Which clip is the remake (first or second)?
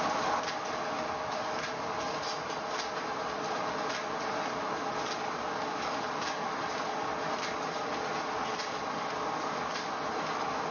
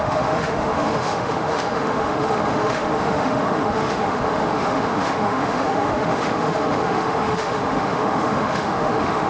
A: second